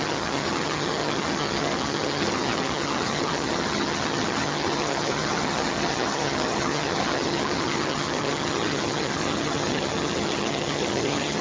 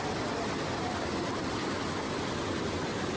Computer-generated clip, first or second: first